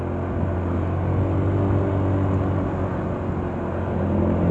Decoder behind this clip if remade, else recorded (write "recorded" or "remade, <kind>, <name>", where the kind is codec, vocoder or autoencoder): recorded